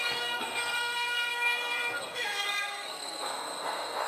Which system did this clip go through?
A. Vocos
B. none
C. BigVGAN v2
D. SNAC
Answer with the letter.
D